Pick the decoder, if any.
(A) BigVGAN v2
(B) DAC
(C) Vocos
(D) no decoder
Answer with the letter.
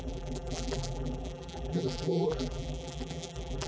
A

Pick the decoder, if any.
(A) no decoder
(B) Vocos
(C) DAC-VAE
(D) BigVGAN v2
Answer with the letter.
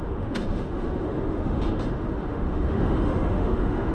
C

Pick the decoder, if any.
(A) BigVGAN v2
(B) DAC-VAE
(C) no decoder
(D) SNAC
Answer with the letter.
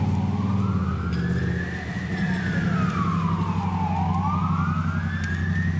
C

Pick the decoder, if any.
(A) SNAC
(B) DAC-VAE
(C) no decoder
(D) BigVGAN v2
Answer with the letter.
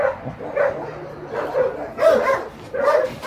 C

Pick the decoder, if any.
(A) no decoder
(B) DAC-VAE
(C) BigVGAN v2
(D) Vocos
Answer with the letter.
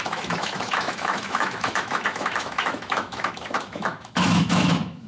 B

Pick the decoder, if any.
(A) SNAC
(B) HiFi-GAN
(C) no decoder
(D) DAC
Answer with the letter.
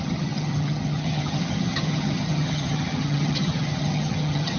B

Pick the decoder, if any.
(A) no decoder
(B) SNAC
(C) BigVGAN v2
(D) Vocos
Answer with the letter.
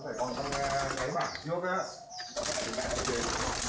A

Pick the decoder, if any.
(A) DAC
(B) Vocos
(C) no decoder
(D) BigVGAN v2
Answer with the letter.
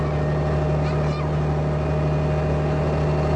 C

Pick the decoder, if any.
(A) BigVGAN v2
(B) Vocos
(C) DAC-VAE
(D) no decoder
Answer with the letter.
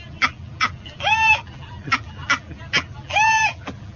A